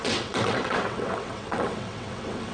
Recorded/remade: remade